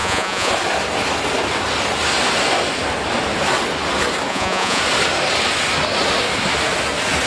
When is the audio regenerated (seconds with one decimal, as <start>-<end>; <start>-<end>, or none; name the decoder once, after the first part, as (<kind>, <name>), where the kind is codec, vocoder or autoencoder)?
0.0-0.5 (vocoder, Vocos); 4.3-4.8